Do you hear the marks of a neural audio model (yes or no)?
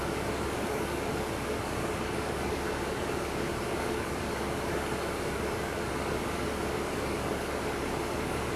yes